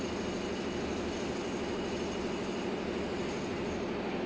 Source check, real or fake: real